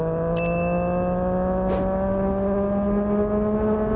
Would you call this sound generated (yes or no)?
no